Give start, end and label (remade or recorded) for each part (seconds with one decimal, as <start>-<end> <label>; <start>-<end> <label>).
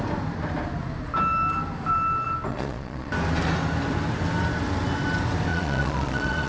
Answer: 0.0-2.5 recorded; 2.5-3.1 remade; 3.1-5.5 recorded; 5.5-6.5 remade